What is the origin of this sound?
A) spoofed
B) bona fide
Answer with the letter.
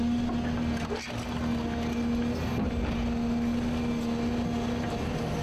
B